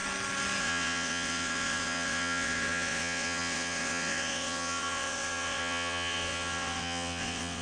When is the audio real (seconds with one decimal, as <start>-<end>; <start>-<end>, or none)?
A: 0.0-0.6